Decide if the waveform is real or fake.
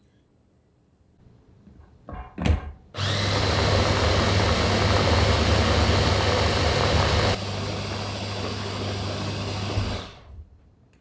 real